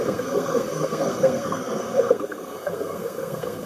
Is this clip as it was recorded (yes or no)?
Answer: no